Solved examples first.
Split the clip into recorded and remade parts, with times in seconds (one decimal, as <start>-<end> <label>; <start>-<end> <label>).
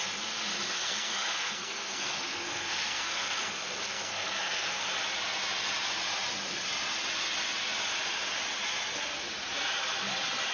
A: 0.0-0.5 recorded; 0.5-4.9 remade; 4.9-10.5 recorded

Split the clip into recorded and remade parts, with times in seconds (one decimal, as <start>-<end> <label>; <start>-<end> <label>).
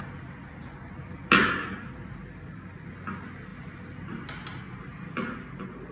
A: 0.0-1.4 recorded; 1.4-2.8 remade; 2.8-5.9 recorded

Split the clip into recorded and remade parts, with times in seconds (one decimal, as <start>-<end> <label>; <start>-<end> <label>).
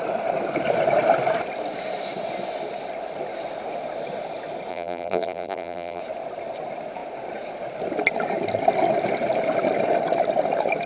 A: 0.0-4.7 recorded; 4.7-6.0 remade; 6.0-10.9 recorded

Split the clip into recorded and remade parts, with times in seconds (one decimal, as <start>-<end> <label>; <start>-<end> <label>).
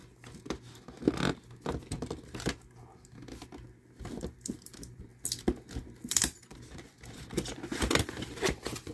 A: 0.0-4.0 recorded; 4.0-5.1 remade; 5.1-6.1 recorded; 6.1-8.9 remade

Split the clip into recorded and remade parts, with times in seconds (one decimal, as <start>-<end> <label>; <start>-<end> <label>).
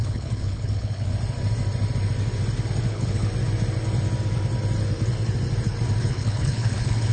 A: 0.0-1.1 remade; 1.1-2.9 recorded; 2.9-3.3 remade; 3.3-6.0 recorded; 6.0-7.1 remade